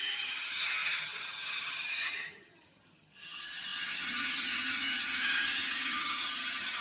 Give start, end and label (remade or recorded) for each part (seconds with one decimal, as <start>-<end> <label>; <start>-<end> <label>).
0.0-6.8 remade